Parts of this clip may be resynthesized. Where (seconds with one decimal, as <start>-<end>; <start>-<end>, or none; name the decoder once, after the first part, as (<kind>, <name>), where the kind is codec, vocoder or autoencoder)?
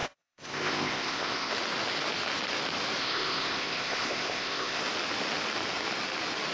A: 0.0-1.5 (codec, ZipCodec); 3.0-4.8